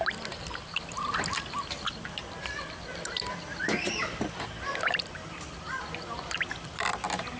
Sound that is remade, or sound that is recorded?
recorded